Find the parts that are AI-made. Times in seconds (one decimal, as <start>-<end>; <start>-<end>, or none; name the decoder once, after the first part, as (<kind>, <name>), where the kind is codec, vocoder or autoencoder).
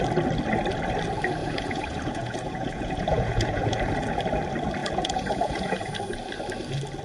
1.4-3.9 (vocoder, Vocos); 4.8-6.0